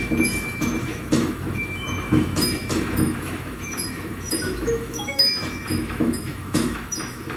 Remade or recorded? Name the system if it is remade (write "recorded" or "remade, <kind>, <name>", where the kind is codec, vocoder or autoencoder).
remade, autoencoder, DAC-VAE